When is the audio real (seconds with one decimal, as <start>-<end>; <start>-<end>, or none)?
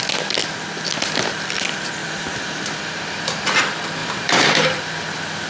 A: 0.0-2.0; 3.6-4.0; 4.9-5.5